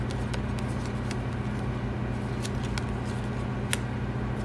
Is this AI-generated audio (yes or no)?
no